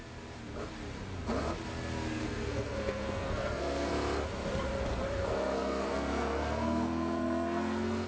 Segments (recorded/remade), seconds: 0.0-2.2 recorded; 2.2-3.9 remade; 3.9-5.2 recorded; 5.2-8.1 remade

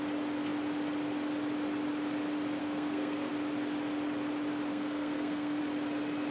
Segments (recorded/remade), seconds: 0.0-2.6 recorded; 2.6-3.3 remade; 3.3-4.7 recorded; 4.7-5.6 remade; 5.6-6.3 recorded